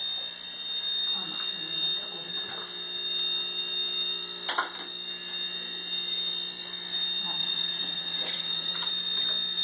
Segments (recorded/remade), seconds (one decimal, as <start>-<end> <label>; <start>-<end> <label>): 0.0-7.4 recorded; 7.4-8.9 remade; 8.9-9.6 recorded